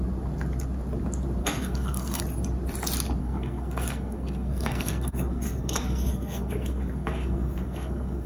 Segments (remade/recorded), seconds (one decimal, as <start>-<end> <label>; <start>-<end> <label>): 0.0-1.4 recorded; 1.4-2.2 remade; 2.2-3.2 recorded; 3.2-8.3 remade